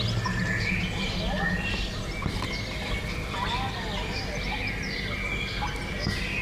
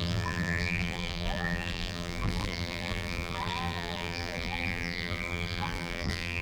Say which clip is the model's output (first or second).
second